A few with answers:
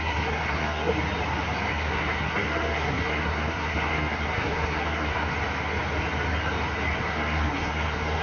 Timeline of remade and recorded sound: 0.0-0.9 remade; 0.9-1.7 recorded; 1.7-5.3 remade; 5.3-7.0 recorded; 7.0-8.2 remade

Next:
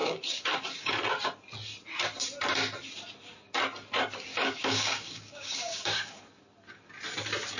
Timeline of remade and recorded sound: 0.0-0.9 remade; 0.9-4.3 recorded; 4.3-6.2 remade; 6.2-7.6 recorded

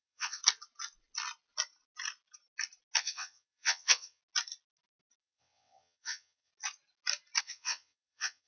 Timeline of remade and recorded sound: 0.0-0.4 remade; 0.4-3.0 recorded; 3.0-4.2 remade; 4.2-5.2 recorded; 5.2-6.5 remade; 6.5-7.4 recorded; 7.4-8.5 remade

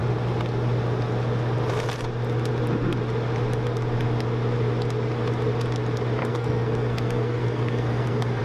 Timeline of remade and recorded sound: 0.0-6.2 recorded; 6.2-8.4 remade

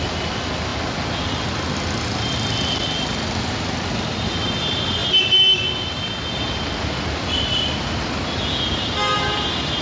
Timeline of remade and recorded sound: 0.0-9.8 recorded

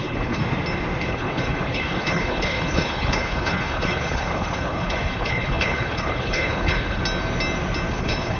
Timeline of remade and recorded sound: 0.0-0.4 remade; 0.4-1.0 recorded; 1.0-7.0 remade; 7.0-7.9 recorded; 7.9-8.4 remade

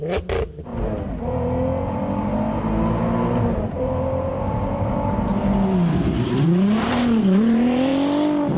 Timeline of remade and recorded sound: 0.0-0.7 remade; 0.7-3.5 recorded; 3.5-5.3 remade; 5.3-6.0 recorded; 6.0-7.9 remade; 7.9-8.6 recorded

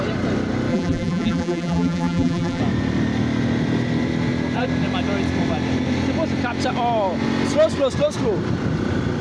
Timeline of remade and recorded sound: 0.0-0.7 recorded; 0.7-2.6 remade; 2.6-9.2 recorded